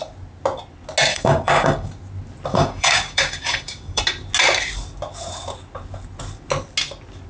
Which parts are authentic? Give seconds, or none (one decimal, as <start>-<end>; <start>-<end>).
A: 0.0-1.1; 1.9-2.5; 4.0-7.3